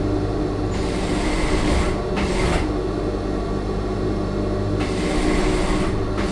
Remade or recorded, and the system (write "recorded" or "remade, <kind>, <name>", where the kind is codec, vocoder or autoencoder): recorded